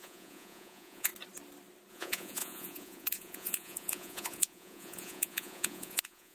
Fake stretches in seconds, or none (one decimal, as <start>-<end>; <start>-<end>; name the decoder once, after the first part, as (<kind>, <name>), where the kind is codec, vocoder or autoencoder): 0.0-1.1 (vocoder, Vocos); 1.9-6.3